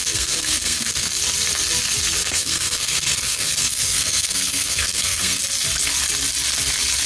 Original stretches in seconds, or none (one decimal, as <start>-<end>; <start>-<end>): 1.1-2.2; 5.4-7.1